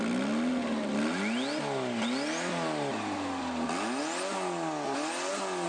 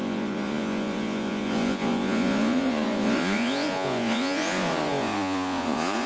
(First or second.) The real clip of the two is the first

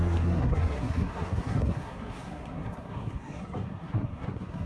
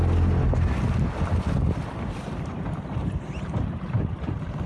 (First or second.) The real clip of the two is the second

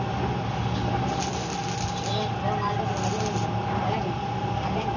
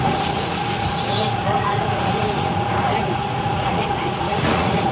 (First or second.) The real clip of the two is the first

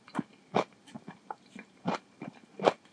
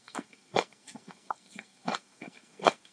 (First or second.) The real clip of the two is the first